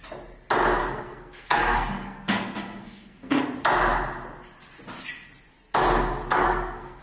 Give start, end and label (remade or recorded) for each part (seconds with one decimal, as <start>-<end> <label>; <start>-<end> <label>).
0.0-0.8 recorded; 0.8-3.4 remade; 3.4-6.3 recorded; 6.3-7.0 remade